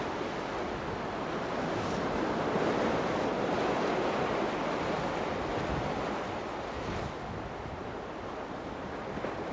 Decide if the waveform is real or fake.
real